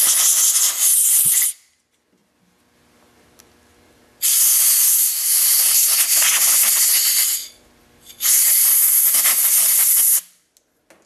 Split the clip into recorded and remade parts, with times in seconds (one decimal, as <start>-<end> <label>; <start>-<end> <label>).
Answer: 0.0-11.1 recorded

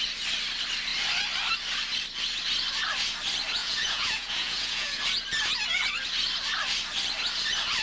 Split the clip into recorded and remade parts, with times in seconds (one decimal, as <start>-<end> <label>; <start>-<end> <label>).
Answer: 0.0-3.6 recorded; 3.6-5.0 remade; 5.0-7.8 recorded

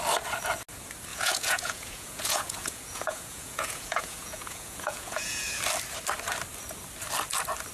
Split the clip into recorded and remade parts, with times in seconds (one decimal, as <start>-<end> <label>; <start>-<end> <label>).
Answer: 0.0-1.1 recorded; 1.1-5.6 remade; 5.6-7.7 recorded

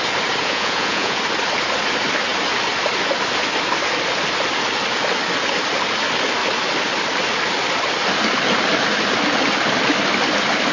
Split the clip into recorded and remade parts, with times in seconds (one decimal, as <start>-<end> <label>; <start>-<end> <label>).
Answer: 0.0-0.4 recorded; 0.4-1.2 remade; 1.2-10.7 recorded

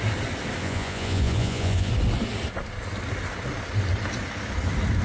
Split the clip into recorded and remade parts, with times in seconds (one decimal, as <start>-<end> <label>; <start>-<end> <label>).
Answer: 0.0-0.6 recorded; 0.6-1.9 remade; 1.9-5.0 recorded

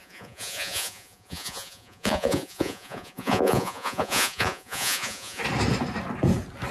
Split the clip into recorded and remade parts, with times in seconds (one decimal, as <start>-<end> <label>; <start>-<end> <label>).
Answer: 0.0-5.4 remade; 5.4-6.7 recorded

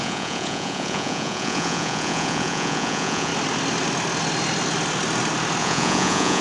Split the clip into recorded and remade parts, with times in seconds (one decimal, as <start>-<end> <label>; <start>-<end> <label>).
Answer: 0.0-3.3 remade; 3.3-5.6 recorded; 5.6-6.4 remade

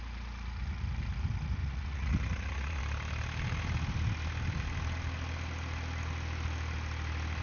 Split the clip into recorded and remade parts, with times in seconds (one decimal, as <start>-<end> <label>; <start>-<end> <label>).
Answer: 0.0-1.6 recorded; 1.6-2.8 remade; 2.8-7.4 recorded